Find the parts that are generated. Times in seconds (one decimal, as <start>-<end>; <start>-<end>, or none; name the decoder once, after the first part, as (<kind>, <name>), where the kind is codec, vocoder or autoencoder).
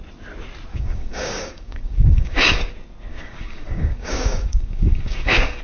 0.7-2.7 (codec, DAC); 3.1-5.6